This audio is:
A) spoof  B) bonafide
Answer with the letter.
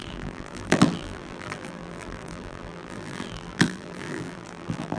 A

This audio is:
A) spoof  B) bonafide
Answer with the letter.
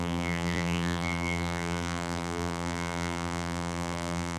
A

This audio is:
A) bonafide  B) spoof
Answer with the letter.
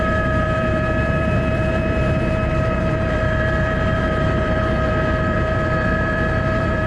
B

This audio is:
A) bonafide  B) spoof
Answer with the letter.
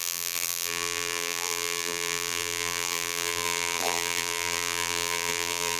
B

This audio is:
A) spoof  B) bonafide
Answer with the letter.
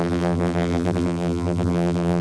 A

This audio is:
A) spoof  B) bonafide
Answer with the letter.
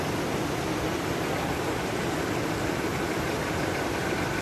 B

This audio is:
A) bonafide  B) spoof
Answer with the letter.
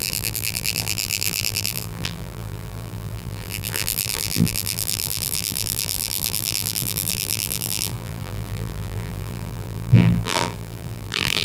B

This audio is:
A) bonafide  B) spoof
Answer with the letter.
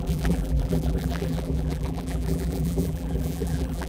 B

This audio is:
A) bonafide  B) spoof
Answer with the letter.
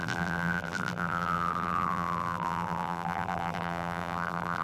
B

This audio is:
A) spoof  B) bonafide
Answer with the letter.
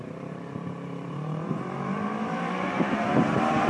A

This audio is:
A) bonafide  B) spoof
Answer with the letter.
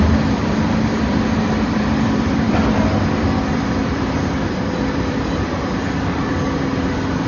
B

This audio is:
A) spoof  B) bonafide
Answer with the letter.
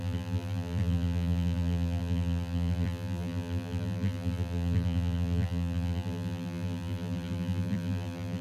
A